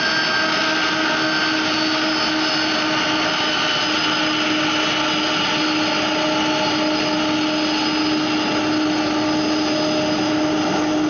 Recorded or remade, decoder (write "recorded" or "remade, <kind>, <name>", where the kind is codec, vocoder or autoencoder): recorded